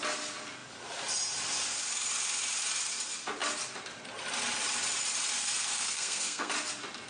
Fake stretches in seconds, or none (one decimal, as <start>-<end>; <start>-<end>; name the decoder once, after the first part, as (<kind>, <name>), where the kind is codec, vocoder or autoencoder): 5.4-6.5 (codec, SNAC)